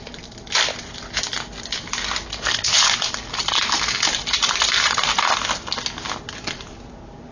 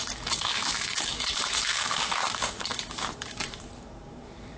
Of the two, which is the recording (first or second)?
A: first